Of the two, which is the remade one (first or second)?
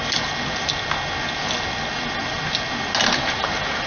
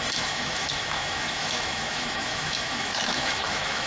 second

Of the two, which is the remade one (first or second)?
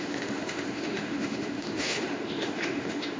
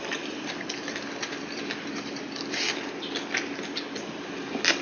first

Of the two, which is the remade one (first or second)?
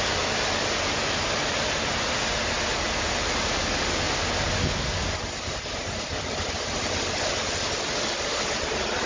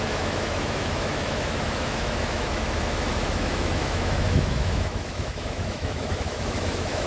second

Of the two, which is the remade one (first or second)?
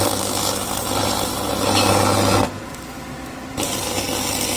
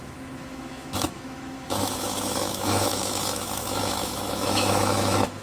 second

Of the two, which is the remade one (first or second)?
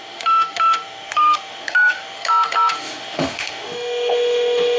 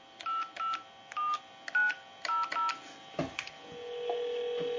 first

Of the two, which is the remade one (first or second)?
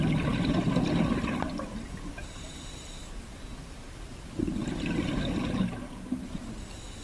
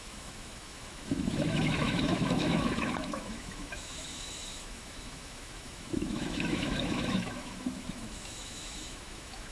second